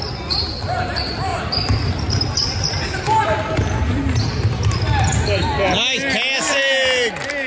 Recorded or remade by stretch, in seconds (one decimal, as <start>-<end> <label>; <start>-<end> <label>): 0.0-1.3 recorded; 1.3-5.2 remade; 5.2-7.5 recorded